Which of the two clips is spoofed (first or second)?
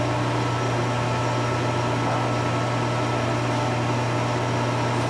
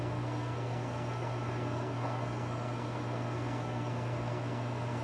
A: second